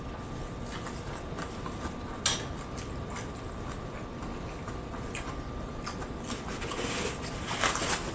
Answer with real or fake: real